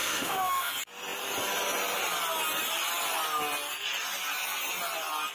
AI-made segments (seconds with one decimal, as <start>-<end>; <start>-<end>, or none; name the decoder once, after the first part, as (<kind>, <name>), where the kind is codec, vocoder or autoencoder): 0.0-0.7 (autoencoder, DAC-VAE)

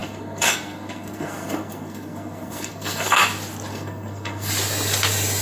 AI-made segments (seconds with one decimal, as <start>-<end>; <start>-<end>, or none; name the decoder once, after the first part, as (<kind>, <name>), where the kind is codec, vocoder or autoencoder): 0.0-3.2 (codec, SNAC); 3.7-4.5

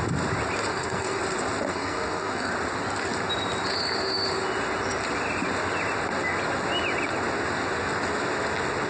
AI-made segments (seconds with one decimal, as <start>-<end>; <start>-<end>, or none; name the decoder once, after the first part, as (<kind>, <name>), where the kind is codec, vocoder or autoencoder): 0.7-1.2 (codec, SNAC); 1.7-2.5

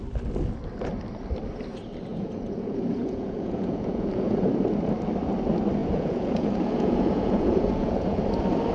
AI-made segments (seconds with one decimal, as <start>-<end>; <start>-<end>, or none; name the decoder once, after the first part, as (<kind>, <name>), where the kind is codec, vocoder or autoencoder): 2.1-4.4 (vocoder, Vocos); 5.8-8.2